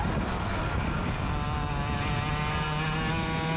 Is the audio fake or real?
real